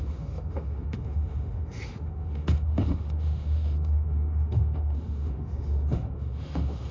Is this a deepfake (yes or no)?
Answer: yes